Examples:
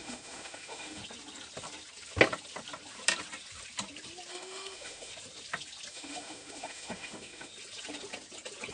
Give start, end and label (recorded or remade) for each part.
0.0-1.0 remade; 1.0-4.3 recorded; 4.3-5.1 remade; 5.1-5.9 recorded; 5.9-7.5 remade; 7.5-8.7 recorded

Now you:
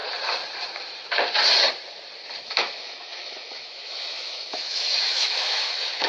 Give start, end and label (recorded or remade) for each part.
0.0-2.4 recorded; 2.4-6.1 remade

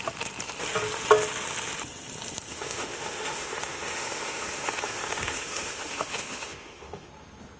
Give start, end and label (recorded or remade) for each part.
0.0-2.5 recorded; 2.5-7.1 remade; 7.1-7.6 recorded